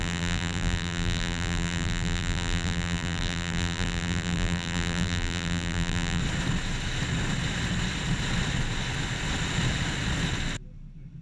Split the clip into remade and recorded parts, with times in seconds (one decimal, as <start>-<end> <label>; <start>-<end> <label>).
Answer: 0.0-6.2 remade; 6.2-11.2 recorded